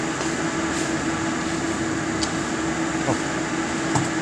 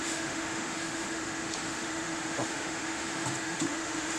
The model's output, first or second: second